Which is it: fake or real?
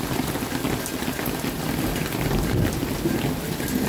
real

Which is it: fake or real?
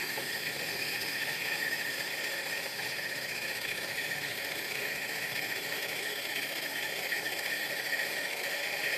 fake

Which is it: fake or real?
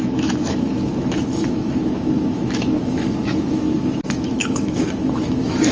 fake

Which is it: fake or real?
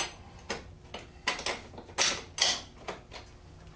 real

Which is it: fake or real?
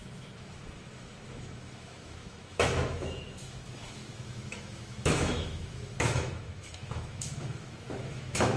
fake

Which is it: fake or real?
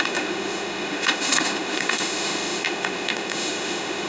fake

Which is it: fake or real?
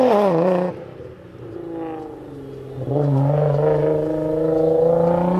real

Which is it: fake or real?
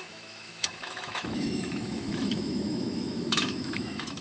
fake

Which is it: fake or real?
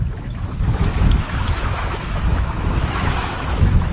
fake